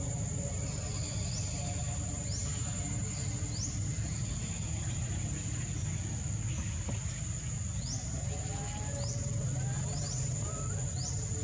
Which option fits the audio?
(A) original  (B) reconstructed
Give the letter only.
A